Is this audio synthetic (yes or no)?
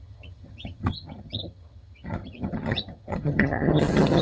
yes